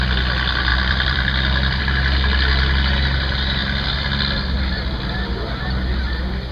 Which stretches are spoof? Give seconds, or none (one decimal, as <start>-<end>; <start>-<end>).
0.7-1.8